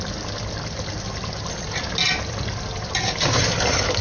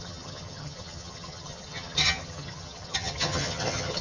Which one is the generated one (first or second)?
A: second